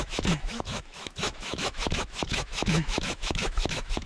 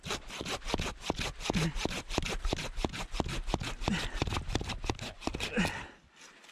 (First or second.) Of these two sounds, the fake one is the first